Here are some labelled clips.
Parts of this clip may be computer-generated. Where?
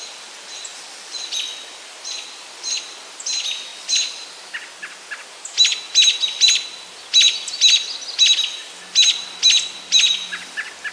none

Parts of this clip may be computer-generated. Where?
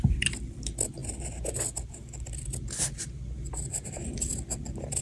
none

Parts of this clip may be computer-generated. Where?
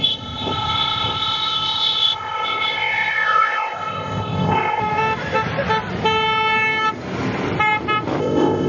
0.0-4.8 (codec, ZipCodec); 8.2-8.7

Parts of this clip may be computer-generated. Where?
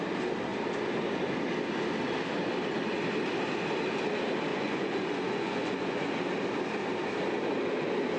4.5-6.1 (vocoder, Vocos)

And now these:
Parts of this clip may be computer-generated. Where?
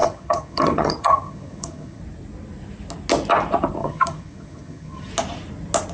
0.0-2.0 (vocoder, HiFi-GAN); 3.8-5.1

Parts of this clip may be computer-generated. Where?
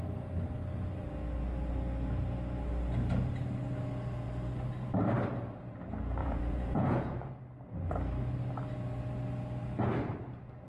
6.2-7.4 (vocoder, Vocos)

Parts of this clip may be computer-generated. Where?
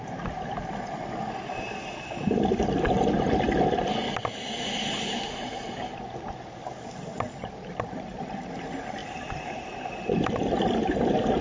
none